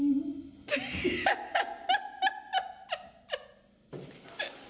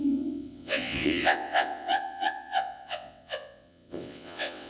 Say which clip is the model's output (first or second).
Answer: second